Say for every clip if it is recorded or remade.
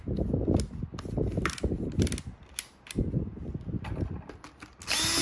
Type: recorded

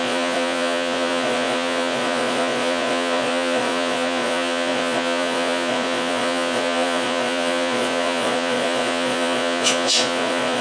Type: remade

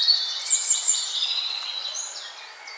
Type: recorded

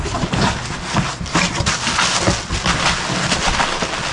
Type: recorded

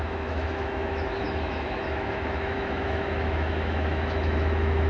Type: remade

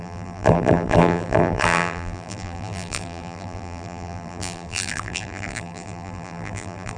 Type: remade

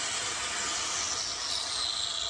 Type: recorded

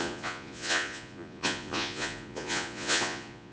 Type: remade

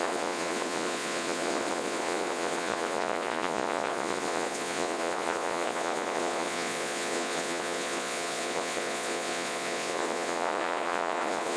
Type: remade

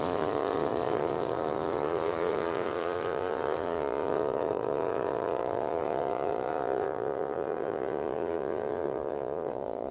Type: remade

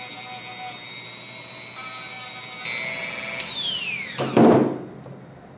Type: recorded